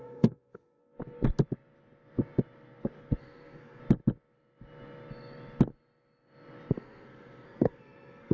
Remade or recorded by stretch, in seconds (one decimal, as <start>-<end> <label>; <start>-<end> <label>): 0.0-0.8 remade; 0.8-3.2 recorded; 3.2-3.8 remade; 3.8-6.7 recorded; 6.7-8.3 remade